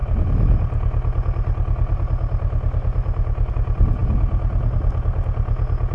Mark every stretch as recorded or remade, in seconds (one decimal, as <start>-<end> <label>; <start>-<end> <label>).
0.0-5.9 recorded